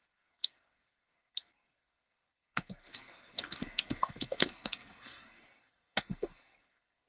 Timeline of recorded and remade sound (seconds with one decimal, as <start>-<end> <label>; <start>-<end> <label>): 0.0-7.1 remade